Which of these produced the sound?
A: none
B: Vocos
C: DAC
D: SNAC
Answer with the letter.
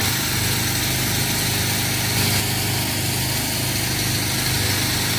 A